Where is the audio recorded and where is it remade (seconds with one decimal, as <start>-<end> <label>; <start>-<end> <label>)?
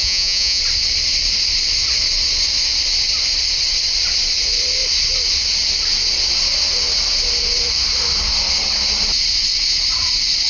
0.0-0.6 remade; 0.6-10.5 recorded